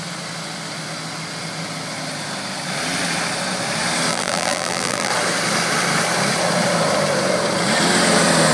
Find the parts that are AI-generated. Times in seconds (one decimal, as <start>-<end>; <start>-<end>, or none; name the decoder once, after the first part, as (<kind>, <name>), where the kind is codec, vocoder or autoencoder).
4.1-5.1 (vocoder, BigVGAN v2)

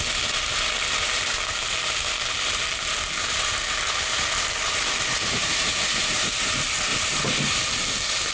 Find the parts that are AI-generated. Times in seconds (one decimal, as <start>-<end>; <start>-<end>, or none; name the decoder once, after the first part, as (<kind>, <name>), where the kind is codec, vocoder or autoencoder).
6.9-8.3 (vocoder, BigVGAN v2)

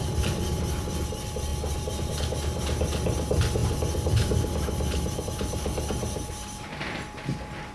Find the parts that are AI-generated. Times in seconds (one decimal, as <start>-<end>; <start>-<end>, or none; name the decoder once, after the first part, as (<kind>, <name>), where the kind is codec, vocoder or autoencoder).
none

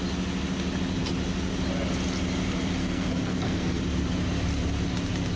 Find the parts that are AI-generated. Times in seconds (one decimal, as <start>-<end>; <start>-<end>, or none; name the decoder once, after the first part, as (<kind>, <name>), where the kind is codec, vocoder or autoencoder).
2.8-3.8 (codec, SNAC)

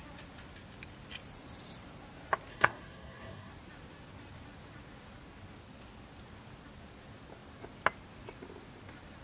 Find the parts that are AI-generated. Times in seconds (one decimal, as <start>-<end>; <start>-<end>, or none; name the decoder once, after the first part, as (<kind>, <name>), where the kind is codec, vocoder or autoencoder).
2.5-3.5 (codec, SNAC)

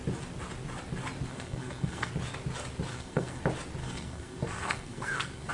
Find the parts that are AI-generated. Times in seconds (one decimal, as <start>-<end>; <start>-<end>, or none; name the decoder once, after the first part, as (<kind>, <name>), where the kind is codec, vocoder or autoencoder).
1.3-2.1 (codec, SNAC); 2.9-3.4; 3.8-5.5

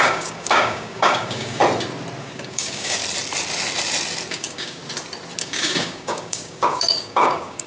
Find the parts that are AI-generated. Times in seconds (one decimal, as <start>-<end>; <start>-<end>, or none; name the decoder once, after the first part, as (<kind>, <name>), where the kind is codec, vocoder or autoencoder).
0.0-1.6 (codec, DAC); 2.2-3.0; 4.3-4.8; 5.4-7.7